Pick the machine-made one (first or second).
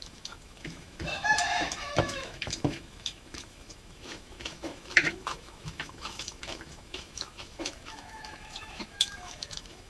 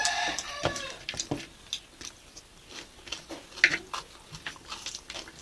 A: first